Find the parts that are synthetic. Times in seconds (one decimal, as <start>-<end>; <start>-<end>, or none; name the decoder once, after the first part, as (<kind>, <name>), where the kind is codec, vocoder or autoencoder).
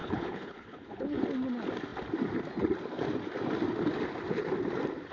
0.0-1.2 (codec, HILCodec)